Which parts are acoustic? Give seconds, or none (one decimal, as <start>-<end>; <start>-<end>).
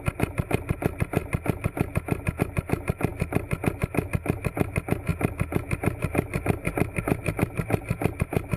0.0-8.6